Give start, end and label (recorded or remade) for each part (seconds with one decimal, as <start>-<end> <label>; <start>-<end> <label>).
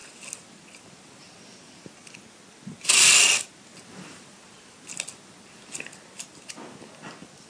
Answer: 0.0-7.5 recorded